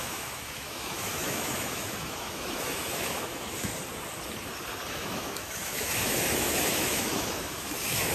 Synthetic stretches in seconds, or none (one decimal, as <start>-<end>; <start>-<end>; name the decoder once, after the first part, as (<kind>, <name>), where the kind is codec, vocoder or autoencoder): 0.0-3.7 (autoencoder, DAC-VAE); 4.9-8.1